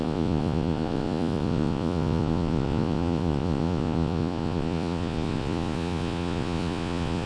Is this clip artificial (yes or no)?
yes